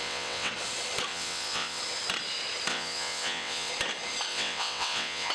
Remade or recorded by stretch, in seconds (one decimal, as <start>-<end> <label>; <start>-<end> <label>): 0.0-0.5 remade; 0.5-1.1 recorded; 1.1-1.8 remade; 1.8-2.7 recorded; 2.7-3.7 remade; 3.7-4.3 recorded; 4.3-5.3 remade